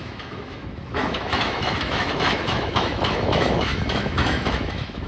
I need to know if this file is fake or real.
fake